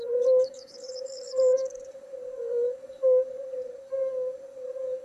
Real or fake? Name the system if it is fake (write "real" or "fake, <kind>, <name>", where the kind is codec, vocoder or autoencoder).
fake, codec, DAC